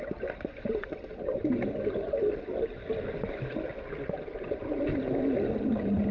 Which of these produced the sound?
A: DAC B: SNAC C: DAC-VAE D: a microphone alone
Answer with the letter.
D